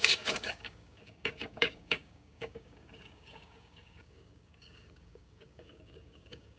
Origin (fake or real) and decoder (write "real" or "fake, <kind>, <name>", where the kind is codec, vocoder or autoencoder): fake, codec, DAC